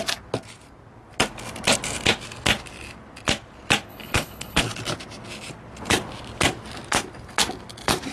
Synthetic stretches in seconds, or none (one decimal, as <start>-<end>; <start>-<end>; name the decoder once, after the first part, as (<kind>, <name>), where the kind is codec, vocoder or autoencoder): 3.9-4.6 (codec, HILCodec)

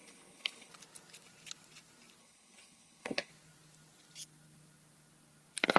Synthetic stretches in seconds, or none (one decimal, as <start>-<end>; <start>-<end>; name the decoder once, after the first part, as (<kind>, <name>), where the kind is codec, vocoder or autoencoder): 0.0-0.7 (codec, HILCodec); 2.2-3.3

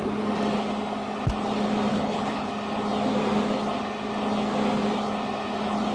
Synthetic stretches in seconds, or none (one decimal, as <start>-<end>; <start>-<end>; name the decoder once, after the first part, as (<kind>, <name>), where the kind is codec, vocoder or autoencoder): 1.9-2.5 (codec, HILCodec)

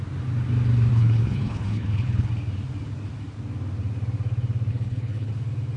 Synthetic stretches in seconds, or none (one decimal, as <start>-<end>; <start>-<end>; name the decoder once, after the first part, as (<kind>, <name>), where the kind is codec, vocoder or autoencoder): 0.9-2.3 (codec, HILCodec); 4.7-5.3

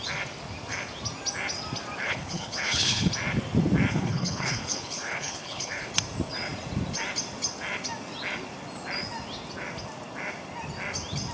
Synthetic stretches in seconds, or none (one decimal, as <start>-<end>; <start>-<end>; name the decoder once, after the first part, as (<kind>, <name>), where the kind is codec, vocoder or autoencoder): 2.0-3.1 (codec, HILCodec); 3.9-5.9